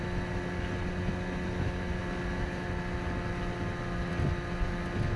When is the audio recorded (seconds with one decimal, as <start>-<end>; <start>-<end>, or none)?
0.0-5.2